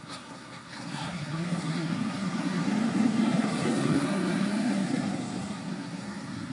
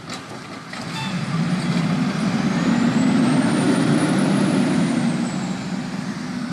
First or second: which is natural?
second